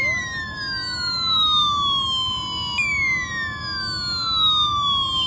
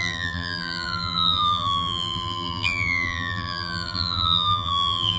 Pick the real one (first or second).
first